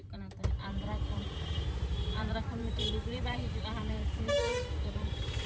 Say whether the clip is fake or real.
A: fake